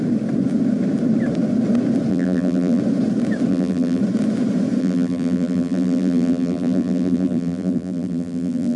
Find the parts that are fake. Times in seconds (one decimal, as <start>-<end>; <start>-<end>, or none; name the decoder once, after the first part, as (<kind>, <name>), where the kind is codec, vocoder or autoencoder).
2.1-2.8 (vocoder, BigVGAN v2); 3.5-4.0; 4.8-8.8

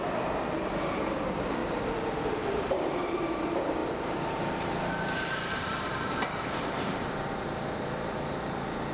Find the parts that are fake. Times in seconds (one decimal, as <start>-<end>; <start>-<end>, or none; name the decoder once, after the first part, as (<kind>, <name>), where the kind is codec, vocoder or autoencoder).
0.0-1.6 (vocoder, BigVGAN v2); 2.4-8.9

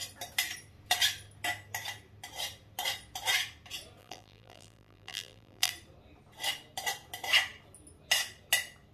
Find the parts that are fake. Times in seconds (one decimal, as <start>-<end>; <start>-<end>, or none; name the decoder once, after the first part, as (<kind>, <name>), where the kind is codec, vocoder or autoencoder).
4.0-5.7 (vocoder, BigVGAN v2)

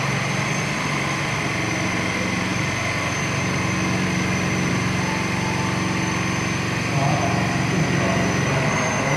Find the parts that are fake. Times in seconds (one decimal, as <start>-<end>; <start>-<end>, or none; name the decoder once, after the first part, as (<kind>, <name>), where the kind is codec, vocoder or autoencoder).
none

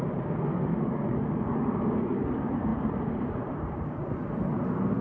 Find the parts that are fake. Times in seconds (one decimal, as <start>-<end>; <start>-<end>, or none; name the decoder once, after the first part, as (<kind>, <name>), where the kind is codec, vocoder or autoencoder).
2.7-3.9 (vocoder, BigVGAN v2)

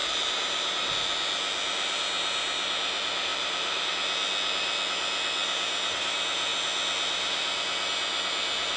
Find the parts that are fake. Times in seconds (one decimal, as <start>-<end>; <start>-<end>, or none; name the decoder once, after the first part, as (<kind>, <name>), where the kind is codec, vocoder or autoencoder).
0.0-0.9 (vocoder, BigVGAN v2); 3.3-3.9